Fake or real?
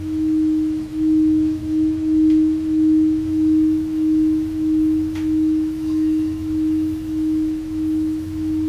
fake